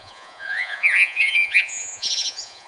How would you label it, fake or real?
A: fake